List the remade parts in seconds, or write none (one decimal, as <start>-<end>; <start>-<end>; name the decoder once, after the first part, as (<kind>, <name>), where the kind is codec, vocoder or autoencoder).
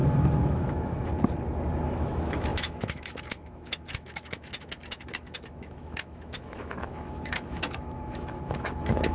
0.0-1.1 (autoencoder, DAC-VAE); 1.9-9.1